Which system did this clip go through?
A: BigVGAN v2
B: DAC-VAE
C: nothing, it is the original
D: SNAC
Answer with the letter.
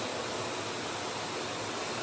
C